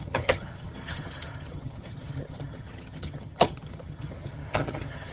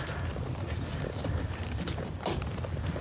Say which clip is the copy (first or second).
first